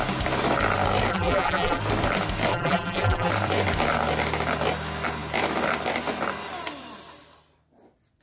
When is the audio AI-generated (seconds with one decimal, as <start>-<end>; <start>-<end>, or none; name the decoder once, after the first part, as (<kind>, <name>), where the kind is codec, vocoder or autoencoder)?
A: 1.1-1.8 (vocoder, BigVGAN v2); 2.5-3.3